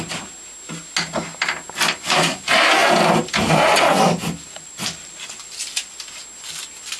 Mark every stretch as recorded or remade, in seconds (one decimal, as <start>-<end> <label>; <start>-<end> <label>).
0.0-2.8 recorded; 2.8-6.1 remade; 6.1-7.0 recorded